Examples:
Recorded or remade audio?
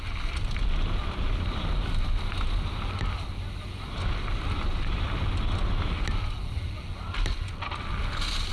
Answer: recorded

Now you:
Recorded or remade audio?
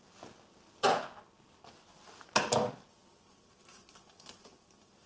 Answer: recorded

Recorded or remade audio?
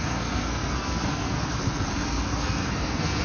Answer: remade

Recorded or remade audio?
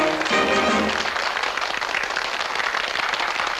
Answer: recorded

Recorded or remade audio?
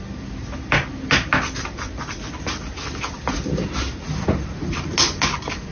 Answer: recorded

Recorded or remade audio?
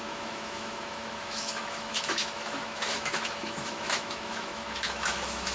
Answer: remade